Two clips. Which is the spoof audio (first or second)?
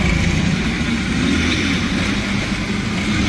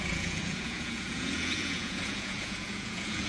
second